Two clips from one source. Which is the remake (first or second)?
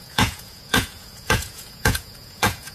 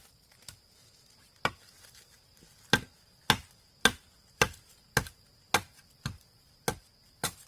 first